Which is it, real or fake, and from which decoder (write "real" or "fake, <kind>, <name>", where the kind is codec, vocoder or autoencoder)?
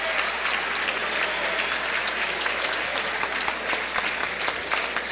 real